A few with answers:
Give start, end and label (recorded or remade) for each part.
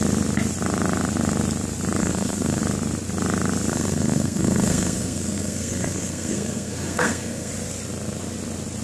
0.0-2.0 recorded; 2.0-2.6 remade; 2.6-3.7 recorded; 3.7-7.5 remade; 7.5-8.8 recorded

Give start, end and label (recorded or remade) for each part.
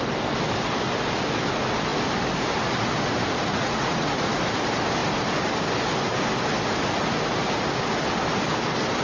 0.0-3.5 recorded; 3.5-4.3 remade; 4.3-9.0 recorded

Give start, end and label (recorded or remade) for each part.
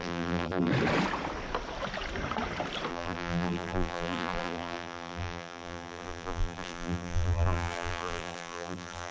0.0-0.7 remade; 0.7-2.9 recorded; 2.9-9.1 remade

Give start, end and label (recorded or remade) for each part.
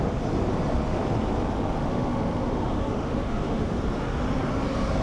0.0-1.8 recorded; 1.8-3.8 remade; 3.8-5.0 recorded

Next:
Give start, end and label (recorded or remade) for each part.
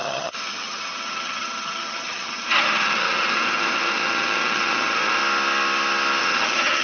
0.0-5.2 remade; 5.2-6.2 recorded; 6.2-6.8 remade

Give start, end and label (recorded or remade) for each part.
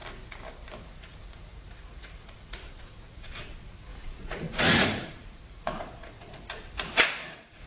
0.0-0.8 recorded; 0.8-7.7 remade